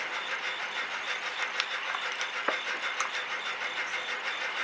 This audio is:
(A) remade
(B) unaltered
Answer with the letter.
B